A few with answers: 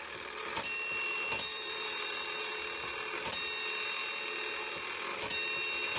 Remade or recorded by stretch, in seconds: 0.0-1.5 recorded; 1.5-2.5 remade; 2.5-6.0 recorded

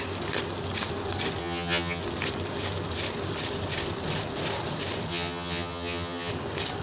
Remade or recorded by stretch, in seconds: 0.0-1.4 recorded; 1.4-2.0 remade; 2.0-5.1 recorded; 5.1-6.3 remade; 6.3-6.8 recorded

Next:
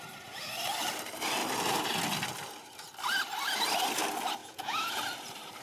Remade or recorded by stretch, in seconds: 0.0-4.4 recorded; 4.4-5.0 remade; 5.0-5.6 recorded

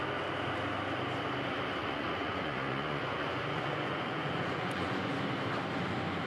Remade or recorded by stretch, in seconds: 0.0-1.8 recorded; 1.8-5.1 remade; 5.1-6.3 recorded